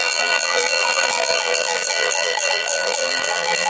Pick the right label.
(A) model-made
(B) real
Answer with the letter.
A